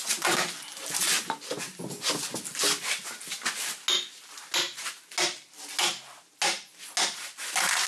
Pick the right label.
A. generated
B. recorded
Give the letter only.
B